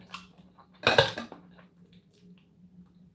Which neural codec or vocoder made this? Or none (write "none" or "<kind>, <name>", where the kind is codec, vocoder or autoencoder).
none